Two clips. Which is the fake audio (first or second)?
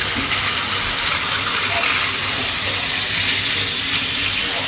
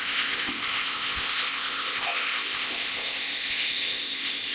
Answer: second